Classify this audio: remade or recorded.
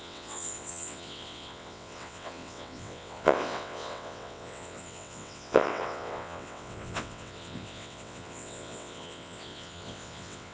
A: remade